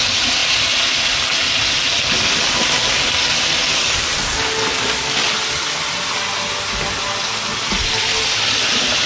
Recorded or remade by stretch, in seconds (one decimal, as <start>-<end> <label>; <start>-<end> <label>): 0.0-9.1 recorded